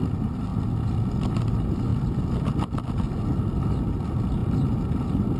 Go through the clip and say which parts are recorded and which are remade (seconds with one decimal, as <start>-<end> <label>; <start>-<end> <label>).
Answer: 0.0-5.4 recorded